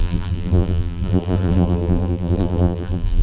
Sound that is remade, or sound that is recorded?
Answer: remade